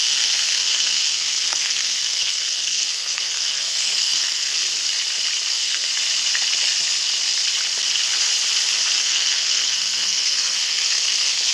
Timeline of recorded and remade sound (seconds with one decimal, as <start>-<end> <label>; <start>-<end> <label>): 0.0-4.6 remade; 4.6-5.5 recorded; 5.5-5.9 remade; 5.9-9.0 recorded; 9.0-11.5 remade